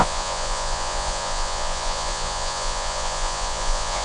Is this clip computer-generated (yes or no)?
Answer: yes